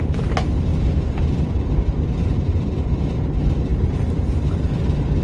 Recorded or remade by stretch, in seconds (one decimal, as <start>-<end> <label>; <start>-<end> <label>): 0.0-0.7 recorded; 0.7-3.2 remade; 3.2-3.7 recorded; 3.7-5.2 remade